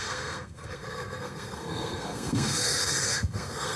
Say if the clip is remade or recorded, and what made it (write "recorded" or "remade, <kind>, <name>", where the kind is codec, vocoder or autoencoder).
remade, codec, SNAC